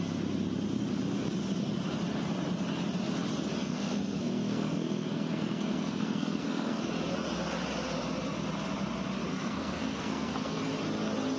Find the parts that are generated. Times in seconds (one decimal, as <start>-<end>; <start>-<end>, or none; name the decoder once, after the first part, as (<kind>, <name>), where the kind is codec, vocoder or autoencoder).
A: 3.6-6.8 (codec, SNAC); 9.3-10.6